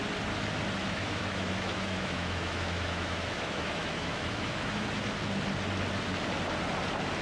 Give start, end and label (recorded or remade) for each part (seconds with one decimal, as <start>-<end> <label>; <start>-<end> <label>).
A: 0.0-0.8 recorded; 0.8-5.0 remade; 5.0-7.2 recorded